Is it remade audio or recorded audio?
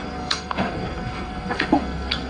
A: remade